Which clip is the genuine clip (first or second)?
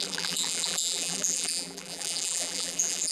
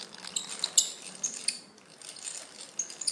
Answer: second